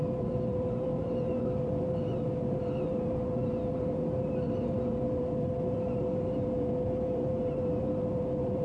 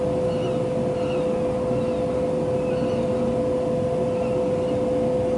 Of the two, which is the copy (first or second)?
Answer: first